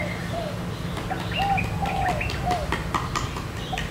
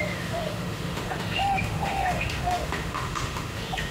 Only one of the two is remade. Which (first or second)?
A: second